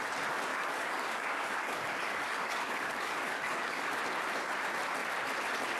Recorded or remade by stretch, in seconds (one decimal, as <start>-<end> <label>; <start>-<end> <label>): 0.0-0.5 recorded; 0.5-4.0 remade; 4.0-5.8 recorded